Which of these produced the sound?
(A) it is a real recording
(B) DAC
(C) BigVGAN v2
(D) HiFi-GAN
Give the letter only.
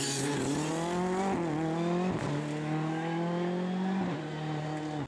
A